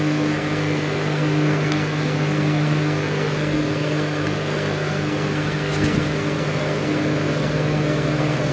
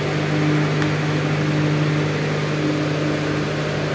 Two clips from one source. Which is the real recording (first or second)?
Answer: second